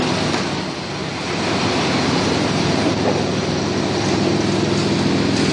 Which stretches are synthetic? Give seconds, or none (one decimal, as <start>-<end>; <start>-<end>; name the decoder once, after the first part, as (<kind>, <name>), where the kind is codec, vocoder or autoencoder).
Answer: 1.0-4.3 (vocoder, BigVGAN v2)